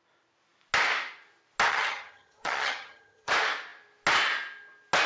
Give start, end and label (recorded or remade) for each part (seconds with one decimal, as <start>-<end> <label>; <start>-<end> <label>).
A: 0.0-1.7 recorded; 1.7-3.3 remade; 3.3-5.1 recorded